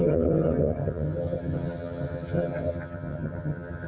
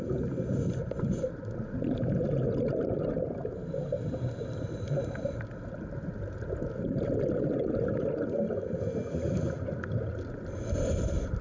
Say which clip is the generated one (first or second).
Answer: first